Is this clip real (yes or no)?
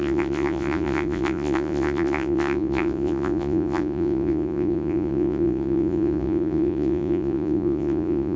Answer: no